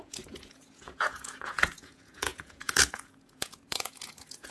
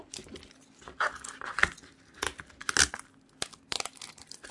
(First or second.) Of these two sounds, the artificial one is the first